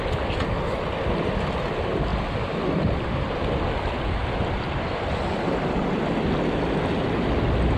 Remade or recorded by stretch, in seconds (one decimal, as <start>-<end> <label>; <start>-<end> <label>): 0.0-7.8 recorded